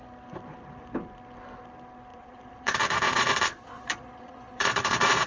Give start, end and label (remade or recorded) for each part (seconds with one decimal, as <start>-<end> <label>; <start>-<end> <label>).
0.0-2.1 recorded; 2.1-5.3 remade